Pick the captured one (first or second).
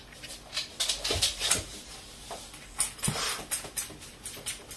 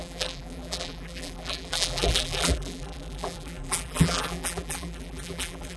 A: first